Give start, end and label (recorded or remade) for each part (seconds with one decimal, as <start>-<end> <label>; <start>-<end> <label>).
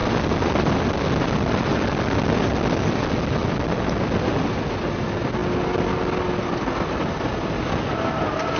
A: 0.0-8.6 recorded